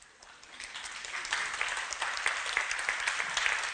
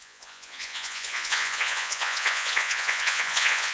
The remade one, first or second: second